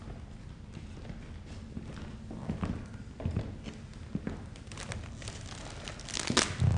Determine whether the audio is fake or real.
real